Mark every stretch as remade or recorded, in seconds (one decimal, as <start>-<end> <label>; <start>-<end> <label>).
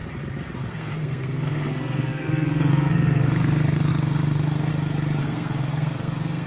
0.0-0.7 recorded; 0.7-4.7 remade; 4.7-5.2 recorded; 5.2-6.5 remade